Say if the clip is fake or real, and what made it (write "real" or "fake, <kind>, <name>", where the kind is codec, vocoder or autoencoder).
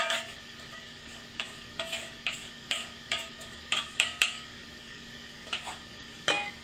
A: fake, codec, DAC